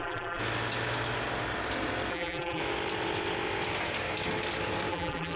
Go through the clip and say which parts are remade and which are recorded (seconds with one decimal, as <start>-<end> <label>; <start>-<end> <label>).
0.0-0.4 remade; 0.4-2.1 recorded; 2.1-2.6 remade; 2.6-4.9 recorded; 4.9-5.4 remade